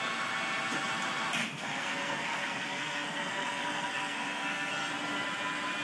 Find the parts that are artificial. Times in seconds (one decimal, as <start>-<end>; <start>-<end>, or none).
1.4-4.9